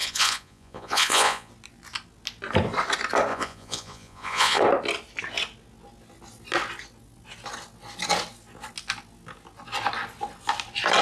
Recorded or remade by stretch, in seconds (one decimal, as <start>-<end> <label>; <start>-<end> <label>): 0.0-1.5 remade; 1.5-3.3 recorded; 3.3-4.6 remade; 4.6-11.0 recorded